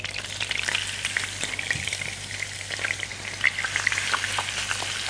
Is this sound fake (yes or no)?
no